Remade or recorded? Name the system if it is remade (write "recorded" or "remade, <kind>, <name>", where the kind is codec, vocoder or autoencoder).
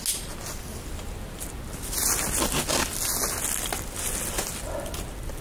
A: recorded